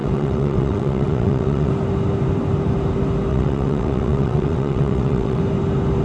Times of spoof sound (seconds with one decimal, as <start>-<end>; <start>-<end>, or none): 0.0-1.7; 3.3-5.4